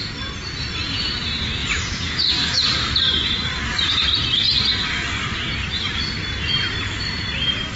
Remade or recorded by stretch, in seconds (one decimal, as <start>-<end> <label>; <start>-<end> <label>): 0.0-1.6 recorded; 1.6-4.1 remade; 4.1-7.8 recorded